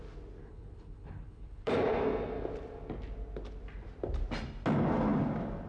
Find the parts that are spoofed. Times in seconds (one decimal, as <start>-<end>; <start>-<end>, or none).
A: 0.4-1.7